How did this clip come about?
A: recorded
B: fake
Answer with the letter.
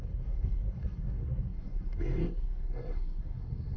B